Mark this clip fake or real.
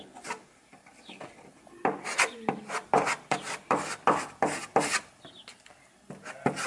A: real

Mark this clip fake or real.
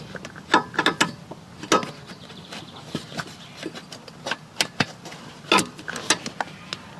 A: real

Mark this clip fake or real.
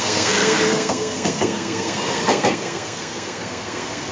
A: fake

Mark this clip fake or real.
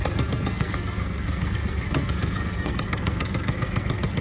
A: fake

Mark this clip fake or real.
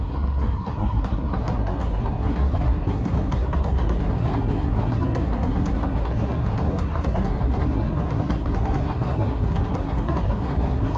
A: fake